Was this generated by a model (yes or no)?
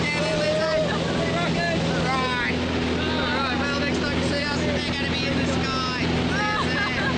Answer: no